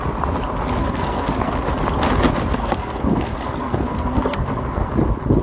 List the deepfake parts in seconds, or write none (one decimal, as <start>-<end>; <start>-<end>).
0.8-1.5; 2.6-4.9